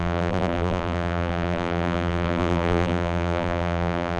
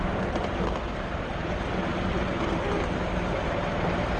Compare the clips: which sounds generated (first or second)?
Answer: first